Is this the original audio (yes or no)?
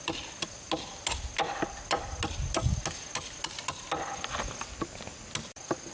yes